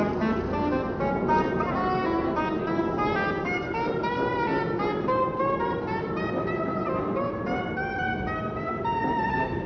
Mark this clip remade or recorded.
recorded